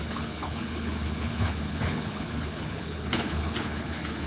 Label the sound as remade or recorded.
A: remade